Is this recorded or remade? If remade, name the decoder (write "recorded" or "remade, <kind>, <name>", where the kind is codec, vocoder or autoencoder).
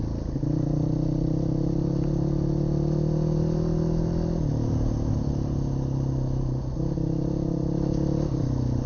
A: recorded